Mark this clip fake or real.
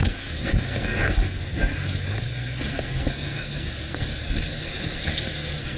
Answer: fake